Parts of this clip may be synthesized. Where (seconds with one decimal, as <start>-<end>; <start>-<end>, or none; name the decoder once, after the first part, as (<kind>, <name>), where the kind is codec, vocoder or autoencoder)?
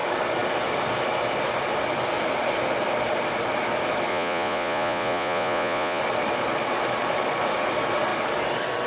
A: 4.1-6.0 (vocoder, Vocos)